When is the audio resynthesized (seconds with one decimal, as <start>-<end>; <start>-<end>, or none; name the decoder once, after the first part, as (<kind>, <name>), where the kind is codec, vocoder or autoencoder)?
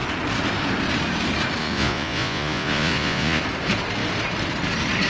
1.6-3.4 (vocoder, Vocos)